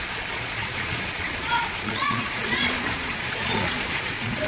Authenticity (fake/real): fake